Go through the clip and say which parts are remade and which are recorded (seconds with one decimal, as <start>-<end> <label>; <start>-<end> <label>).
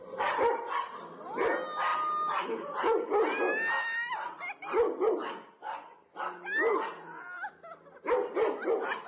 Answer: 0.0-9.1 recorded